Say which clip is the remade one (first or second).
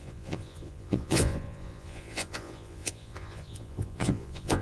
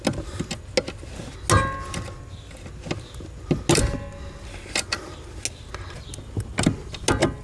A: first